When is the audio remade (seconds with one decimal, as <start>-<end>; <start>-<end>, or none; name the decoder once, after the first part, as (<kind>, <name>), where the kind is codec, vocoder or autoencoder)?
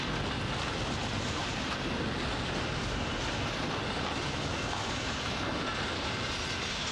none